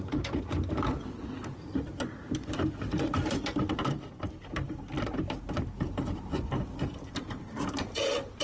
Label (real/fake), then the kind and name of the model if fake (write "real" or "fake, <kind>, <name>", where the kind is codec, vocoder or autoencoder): fake, vocoder, BigVGAN v2